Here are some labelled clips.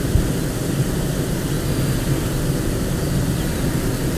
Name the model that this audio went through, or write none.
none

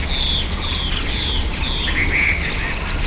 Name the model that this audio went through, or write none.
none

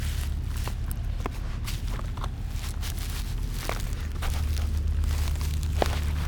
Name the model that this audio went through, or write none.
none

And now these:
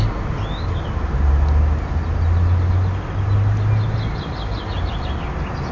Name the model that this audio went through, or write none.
none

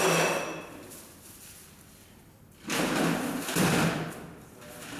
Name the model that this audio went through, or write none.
none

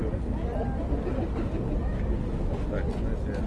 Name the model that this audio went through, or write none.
none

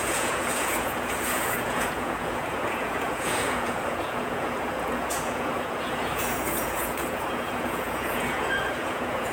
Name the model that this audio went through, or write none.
vocoder, Vocos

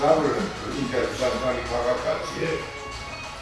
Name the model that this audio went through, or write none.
none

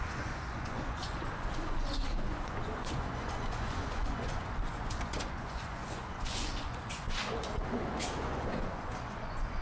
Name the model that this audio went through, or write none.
vocoder, Vocos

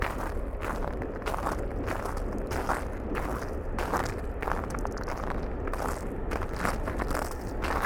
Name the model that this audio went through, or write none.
none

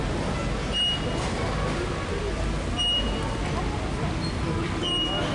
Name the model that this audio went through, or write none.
none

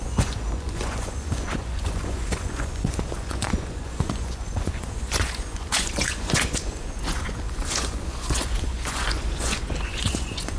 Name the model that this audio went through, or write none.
vocoder, Vocos